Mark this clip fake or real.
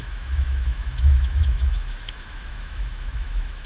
fake